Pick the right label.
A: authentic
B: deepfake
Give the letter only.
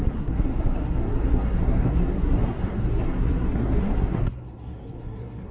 B